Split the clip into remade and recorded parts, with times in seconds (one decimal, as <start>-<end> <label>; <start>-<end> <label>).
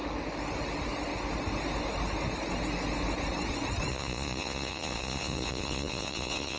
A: 0.0-3.9 recorded; 3.9-6.6 remade